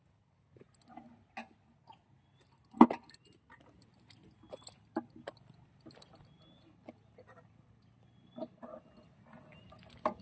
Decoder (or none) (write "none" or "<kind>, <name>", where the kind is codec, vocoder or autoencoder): none